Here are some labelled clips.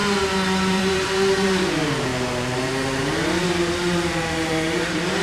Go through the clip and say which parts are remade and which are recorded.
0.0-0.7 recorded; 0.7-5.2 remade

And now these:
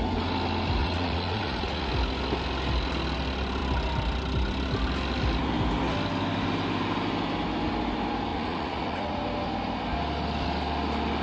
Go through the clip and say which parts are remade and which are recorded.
0.0-0.8 recorded; 0.8-1.9 remade; 1.9-8.3 recorded; 8.3-9.2 remade; 9.2-11.2 recorded

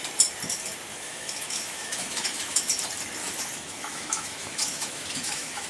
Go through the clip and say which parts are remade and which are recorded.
0.0-0.9 recorded; 0.9-2.7 remade; 2.7-3.2 recorded; 3.2-5.7 remade